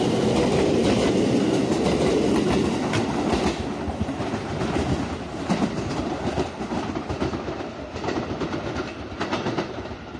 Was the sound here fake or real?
real